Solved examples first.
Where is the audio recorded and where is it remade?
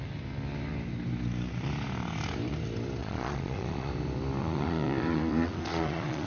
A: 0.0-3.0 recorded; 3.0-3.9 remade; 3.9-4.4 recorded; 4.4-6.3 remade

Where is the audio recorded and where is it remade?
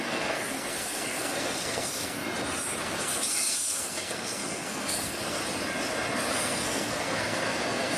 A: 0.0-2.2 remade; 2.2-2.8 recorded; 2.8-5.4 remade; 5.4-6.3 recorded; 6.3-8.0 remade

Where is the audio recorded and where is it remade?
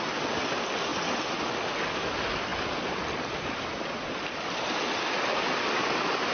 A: 0.0-6.3 recorded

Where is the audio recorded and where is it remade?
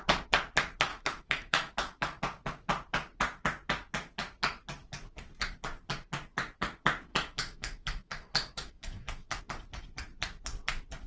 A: 0.0-0.9 recorded; 0.9-2.2 remade; 2.2-7.1 recorded; 7.1-9.4 remade; 9.4-11.1 recorded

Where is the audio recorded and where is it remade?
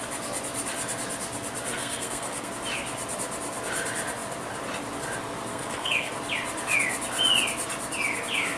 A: 0.0-1.7 recorded; 1.7-2.5 remade; 2.5-5.5 recorded; 5.5-6.1 remade; 6.1-8.6 recorded